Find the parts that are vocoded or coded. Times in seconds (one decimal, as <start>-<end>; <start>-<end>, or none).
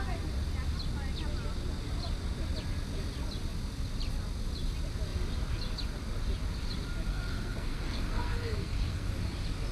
7.1-9.1